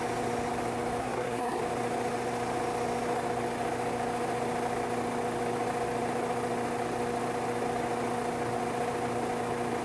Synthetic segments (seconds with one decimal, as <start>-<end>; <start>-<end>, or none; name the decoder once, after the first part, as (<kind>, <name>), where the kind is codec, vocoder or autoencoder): 1.0-1.6 (codec, SNAC)